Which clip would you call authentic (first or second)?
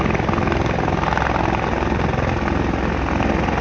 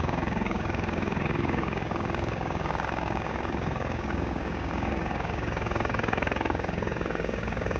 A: first